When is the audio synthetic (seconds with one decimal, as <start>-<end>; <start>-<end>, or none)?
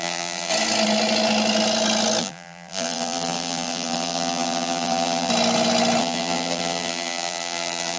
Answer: 0.0-0.5; 2.2-5.3; 6.0-8.0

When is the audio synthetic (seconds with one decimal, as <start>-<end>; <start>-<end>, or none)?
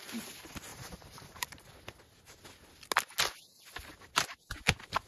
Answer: 0.7-1.7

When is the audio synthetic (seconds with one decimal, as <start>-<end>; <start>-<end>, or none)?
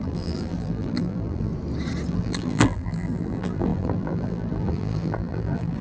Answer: 0.0-1.5; 2.1-5.8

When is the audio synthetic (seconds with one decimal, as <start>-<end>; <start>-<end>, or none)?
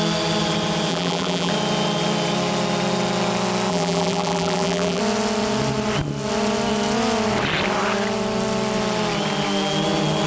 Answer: 0.9-1.5; 3.7-5.0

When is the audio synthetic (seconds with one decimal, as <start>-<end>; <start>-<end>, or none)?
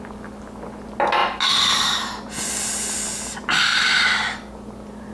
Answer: 3.7-5.1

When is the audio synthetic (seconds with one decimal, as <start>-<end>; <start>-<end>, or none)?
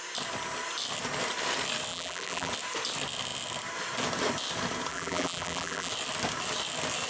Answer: 1.9-2.5; 4.9-5.9